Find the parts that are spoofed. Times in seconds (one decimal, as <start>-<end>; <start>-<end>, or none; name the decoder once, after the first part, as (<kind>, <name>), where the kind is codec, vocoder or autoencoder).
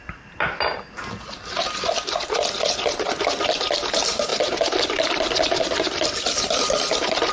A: 4.3-4.8 (vocoder, BigVGAN v2)